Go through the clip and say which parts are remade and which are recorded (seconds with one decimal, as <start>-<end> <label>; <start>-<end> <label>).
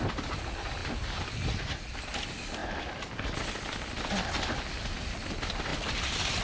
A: 0.0-6.4 recorded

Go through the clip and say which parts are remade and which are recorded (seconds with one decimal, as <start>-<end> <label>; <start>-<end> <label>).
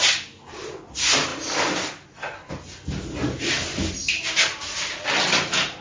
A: 0.0-5.8 recorded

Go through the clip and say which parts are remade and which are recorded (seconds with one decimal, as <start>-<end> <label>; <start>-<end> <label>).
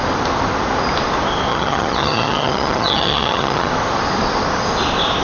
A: 0.0-1.5 recorded; 1.5-3.7 remade; 3.7-5.2 recorded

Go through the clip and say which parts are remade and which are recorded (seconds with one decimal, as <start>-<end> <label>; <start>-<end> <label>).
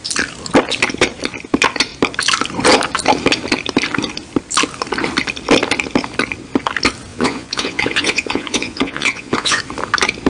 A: 0.0-7.1 recorded; 7.1-9.6 remade; 9.6-10.3 recorded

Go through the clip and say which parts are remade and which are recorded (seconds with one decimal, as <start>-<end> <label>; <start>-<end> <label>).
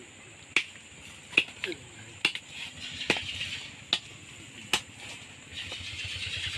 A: 0.0-6.6 recorded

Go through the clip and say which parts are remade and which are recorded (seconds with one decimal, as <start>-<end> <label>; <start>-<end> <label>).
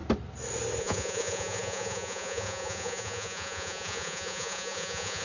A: 0.0-0.8 recorded; 0.8-5.2 remade